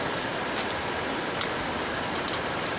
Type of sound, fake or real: real